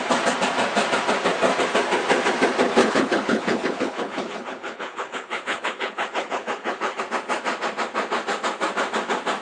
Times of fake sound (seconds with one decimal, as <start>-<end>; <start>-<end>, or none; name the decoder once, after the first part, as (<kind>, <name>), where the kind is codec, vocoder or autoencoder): 2.8-7.0 (codec, HILCodec)